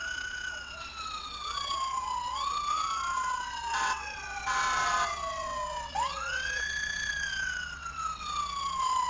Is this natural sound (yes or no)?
no